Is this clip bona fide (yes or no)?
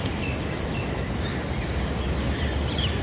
yes